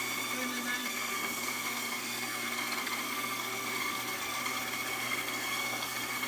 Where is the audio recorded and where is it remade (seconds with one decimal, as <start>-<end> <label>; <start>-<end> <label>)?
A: 0.0-0.8 recorded; 0.8-4.4 remade; 4.4-4.9 recorded; 4.9-6.3 remade